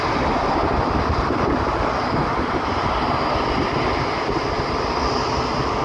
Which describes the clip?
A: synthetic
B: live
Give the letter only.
B